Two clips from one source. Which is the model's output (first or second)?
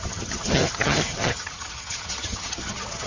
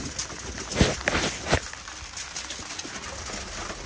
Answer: first